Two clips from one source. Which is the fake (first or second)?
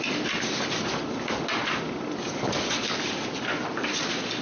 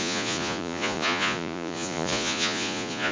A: second